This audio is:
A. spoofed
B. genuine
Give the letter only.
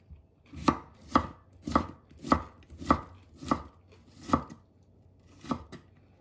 B